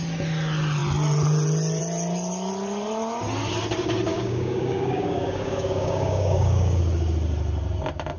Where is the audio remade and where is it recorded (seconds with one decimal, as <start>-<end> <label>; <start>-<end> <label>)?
0.0-4.1 recorded; 4.1-6.8 remade; 6.8-8.2 recorded